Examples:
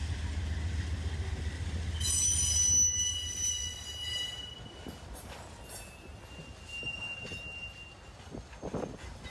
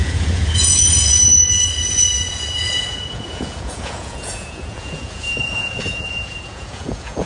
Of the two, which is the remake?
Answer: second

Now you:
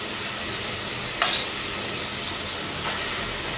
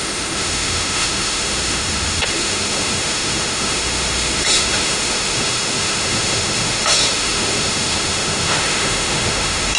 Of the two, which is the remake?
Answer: second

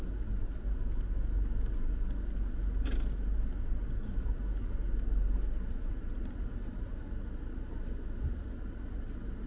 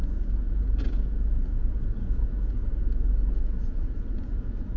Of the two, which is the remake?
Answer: second